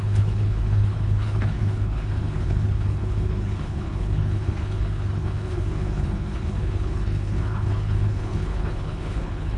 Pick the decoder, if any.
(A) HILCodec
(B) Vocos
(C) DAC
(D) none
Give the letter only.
A